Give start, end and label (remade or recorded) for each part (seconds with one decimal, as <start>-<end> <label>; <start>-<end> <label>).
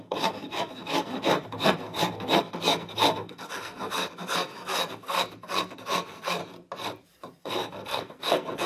0.0-6.4 remade; 6.4-7.4 recorded; 7.4-8.7 remade